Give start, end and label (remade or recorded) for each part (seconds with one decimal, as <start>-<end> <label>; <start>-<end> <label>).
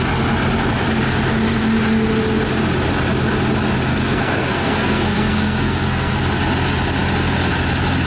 0.0-3.9 recorded; 3.9-6.2 remade; 6.2-8.1 recorded